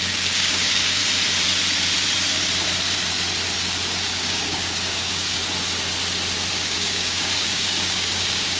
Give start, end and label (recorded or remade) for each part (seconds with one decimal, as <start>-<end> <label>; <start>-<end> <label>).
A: 0.0-1.0 remade; 1.0-4.2 recorded; 4.2-5.4 remade; 5.4-6.5 recorded; 6.5-8.6 remade